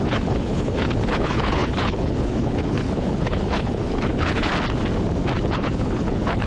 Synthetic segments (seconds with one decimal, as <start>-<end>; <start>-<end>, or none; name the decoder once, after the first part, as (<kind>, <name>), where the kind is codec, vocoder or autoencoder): 0.0-4.5 (codec, HILCodec); 5.4-6.5